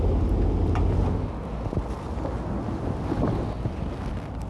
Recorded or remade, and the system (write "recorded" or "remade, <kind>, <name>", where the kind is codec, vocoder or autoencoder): recorded